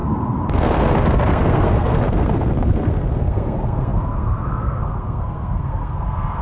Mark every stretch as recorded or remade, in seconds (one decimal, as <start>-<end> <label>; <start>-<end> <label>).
0.0-0.5 recorded; 0.5-6.4 remade